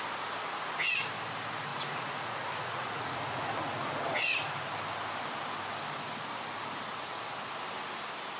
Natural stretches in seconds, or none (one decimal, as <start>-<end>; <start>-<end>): 0.0-1.7; 3.9-8.4